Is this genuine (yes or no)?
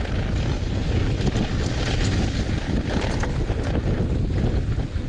yes